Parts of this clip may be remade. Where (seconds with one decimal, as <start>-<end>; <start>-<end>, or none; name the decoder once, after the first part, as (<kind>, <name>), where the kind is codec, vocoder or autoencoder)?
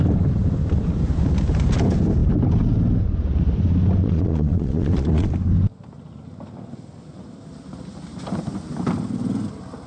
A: 4.0-5.3 (vocoder, Vocos)